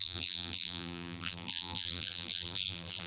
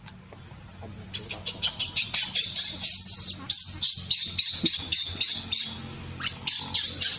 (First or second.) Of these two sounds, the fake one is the first